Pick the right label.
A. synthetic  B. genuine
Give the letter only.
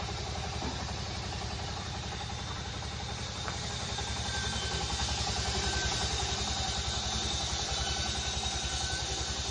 A